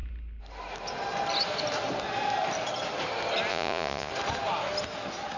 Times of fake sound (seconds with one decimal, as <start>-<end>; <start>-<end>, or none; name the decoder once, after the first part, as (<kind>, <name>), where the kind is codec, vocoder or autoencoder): 3.5-4.1 (vocoder, Vocos)

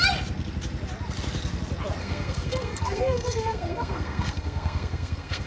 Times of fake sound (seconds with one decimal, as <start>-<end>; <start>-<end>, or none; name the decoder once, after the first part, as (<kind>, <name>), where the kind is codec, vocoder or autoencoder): 2.0-5.5 (codec, SNAC)

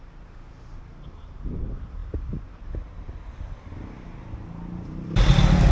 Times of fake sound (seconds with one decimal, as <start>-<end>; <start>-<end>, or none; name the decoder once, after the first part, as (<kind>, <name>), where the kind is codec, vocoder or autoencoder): none

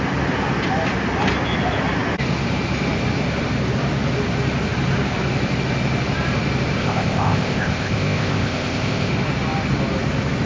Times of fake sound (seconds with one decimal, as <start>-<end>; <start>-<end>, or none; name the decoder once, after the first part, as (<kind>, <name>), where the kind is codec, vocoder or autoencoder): 6.8-9.1 (codec, ZipCodec)

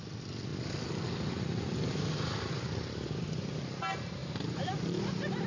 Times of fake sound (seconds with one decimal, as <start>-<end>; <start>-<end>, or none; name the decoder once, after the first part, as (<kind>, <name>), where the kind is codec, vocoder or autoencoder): 4.2-5.5 (vocoder, BigVGAN v2)

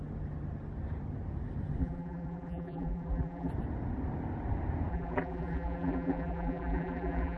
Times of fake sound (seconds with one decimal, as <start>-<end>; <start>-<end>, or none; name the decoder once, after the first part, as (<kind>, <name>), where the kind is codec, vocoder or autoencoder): 1.8-3.5 (vocoder, BigVGAN v2); 4.9-7.4

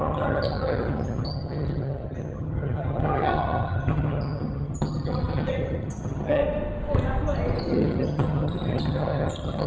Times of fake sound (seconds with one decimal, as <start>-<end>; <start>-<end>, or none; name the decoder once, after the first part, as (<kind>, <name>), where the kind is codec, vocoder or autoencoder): 0.0-6.4 (vocoder, HiFi-GAN); 7.7-9.7

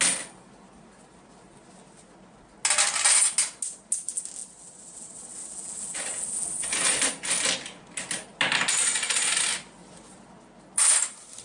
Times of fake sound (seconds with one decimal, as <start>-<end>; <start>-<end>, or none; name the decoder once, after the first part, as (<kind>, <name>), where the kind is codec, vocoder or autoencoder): none